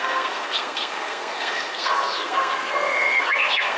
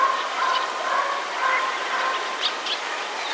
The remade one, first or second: first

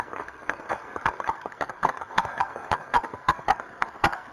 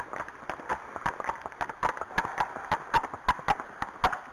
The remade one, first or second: first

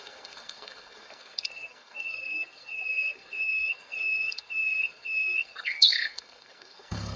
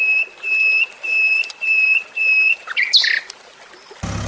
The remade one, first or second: first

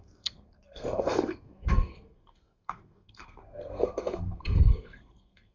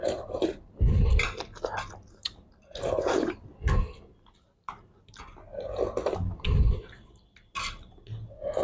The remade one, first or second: first